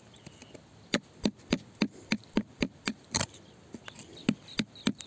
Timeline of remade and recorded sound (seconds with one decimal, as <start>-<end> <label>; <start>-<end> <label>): 0.0-0.4 recorded; 0.4-3.5 remade; 3.5-5.1 recorded